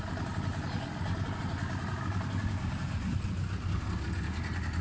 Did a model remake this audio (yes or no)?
no